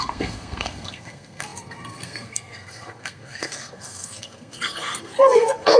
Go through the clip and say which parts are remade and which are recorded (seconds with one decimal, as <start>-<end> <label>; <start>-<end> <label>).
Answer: 0.0-5.8 remade